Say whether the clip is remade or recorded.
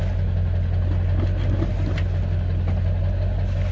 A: recorded